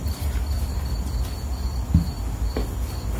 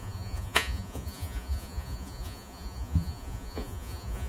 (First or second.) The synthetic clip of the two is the second